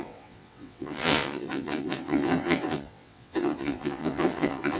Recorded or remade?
remade